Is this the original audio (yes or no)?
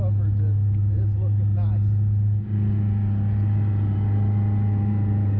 yes